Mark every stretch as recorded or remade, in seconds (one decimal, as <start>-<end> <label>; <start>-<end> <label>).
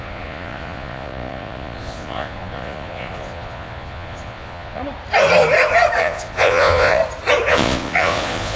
0.0-4.8 remade; 4.8-6.0 recorded; 6.0-7.0 remade; 7.0-7.5 recorded; 7.5-8.6 remade